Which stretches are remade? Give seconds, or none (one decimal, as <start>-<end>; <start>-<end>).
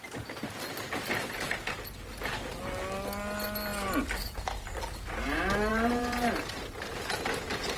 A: 5.7-7.8